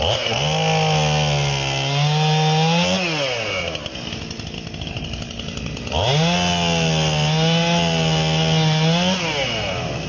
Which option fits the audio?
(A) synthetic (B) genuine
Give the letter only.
B